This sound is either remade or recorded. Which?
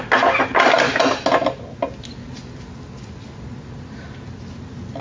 recorded